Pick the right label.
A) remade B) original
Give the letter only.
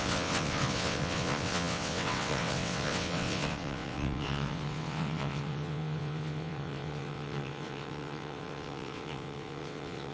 A